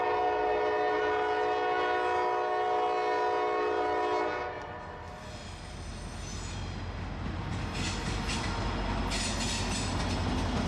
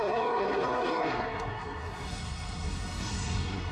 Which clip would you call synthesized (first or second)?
second